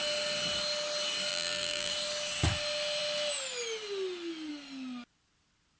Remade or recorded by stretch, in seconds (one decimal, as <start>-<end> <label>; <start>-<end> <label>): 0.0-1.3 recorded; 1.3-1.9 remade; 1.9-5.8 recorded